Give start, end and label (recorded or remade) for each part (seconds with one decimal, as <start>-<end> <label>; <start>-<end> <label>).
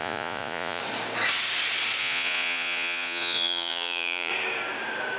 0.0-0.8 remade; 0.8-2.0 recorded; 2.0-4.3 remade; 4.3-5.2 recorded